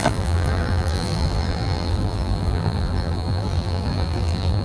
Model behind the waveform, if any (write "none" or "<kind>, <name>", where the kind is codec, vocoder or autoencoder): vocoder, BigVGAN v2